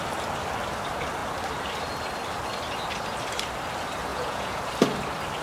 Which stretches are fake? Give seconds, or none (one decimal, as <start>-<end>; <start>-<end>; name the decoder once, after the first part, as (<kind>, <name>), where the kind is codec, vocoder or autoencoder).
4.1-4.7 (vocoder, Vocos)

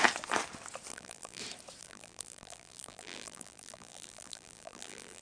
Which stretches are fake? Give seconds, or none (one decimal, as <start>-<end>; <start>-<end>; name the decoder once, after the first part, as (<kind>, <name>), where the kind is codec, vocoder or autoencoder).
0.9-1.4 (vocoder, BigVGAN v2); 1.8-5.2

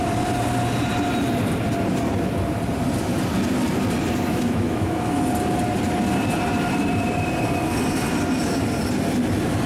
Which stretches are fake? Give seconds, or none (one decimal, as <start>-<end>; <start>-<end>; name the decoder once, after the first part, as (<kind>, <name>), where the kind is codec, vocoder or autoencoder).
4.3-5.2 (autoencoder, DAC-VAE)

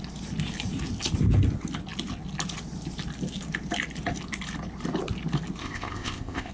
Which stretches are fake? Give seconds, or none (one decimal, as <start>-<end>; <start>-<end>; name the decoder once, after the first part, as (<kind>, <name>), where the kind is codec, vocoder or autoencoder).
5.6-6.5 (codec, ZipCodec)

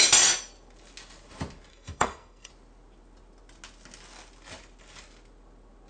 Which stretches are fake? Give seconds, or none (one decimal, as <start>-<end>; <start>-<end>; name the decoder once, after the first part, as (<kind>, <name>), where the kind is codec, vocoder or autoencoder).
1.7-2.5 (codec, SNAC)

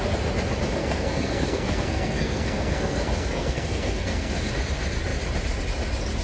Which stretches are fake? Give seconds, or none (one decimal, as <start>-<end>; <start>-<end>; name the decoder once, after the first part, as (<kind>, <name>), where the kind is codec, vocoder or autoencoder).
0.8-4.5 (codec, SNAC)

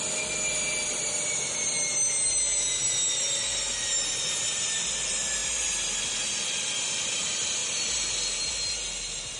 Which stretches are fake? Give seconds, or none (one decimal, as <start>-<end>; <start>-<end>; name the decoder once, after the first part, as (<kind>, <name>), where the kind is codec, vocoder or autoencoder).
none

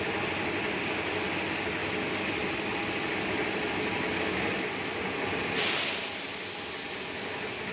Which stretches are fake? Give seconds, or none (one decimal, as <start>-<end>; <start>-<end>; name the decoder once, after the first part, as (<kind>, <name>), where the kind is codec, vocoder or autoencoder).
none